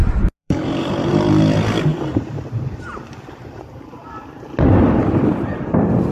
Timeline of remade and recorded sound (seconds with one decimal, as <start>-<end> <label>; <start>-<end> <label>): 0.0-1.1 remade; 1.1-1.9 recorded; 1.9-4.4 remade; 4.4-6.1 recorded